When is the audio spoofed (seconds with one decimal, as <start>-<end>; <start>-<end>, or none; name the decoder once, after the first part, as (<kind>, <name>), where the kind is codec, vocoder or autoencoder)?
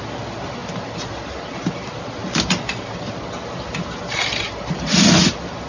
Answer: none